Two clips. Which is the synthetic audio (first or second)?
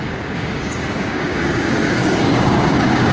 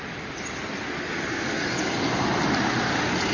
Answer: first